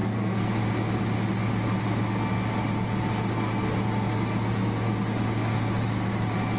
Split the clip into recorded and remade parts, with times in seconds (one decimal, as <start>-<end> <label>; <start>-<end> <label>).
0.0-0.5 remade; 0.5-6.6 recorded